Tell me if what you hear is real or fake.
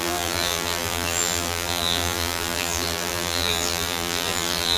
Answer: fake